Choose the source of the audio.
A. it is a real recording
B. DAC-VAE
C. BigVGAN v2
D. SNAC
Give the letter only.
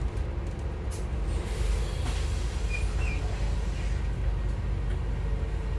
A